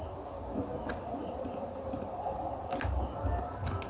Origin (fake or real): real